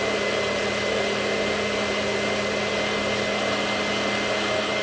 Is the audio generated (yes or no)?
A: no